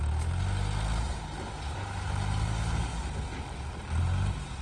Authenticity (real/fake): real